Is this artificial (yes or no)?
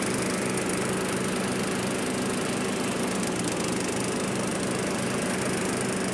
no